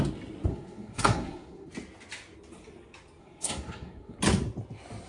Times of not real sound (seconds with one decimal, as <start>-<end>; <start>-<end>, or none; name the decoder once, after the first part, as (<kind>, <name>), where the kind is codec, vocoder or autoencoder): 0.5-1.7 (codec, SNAC); 3.2-4.2